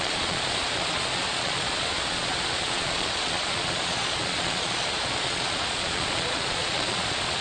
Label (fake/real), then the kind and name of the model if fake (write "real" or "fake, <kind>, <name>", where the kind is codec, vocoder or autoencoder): fake, vocoder, Vocos